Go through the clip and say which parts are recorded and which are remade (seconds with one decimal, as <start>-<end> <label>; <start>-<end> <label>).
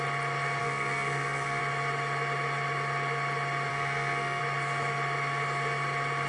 0.0-0.6 recorded; 0.6-1.6 remade; 1.6-3.7 recorded; 3.7-4.4 remade; 4.4-6.3 recorded